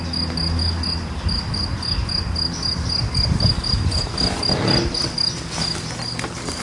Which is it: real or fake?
real